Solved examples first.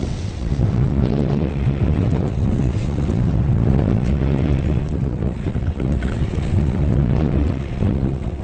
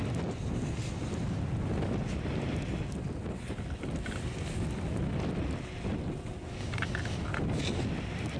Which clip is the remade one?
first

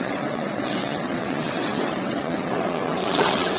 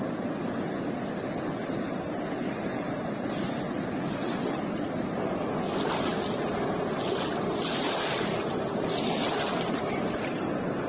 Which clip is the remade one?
first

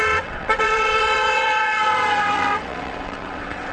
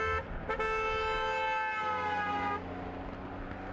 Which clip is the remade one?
first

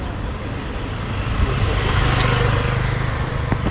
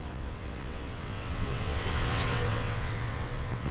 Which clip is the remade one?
second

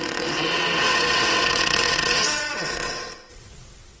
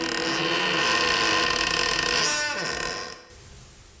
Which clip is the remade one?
first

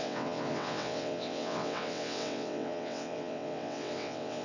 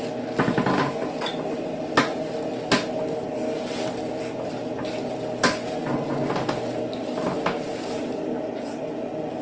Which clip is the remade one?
first